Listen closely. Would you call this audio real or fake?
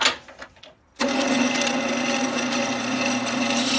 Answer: real